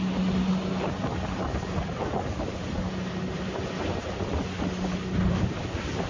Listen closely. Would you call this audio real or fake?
real